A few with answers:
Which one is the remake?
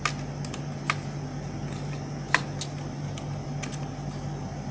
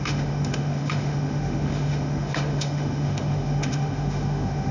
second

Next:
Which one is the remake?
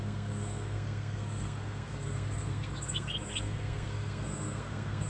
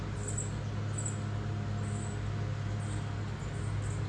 first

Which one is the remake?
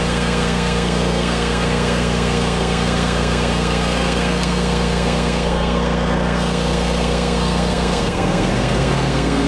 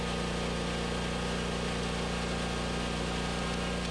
first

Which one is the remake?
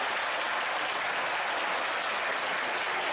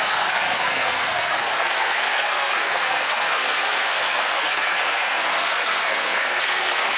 second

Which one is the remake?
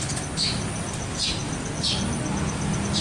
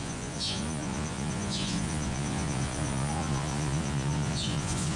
second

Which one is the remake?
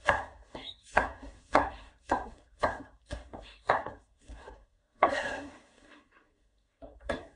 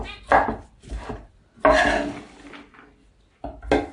first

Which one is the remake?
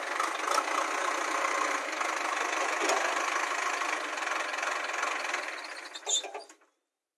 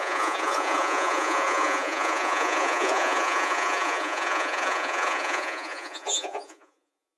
second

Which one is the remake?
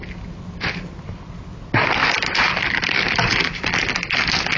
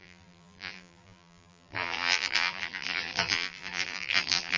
second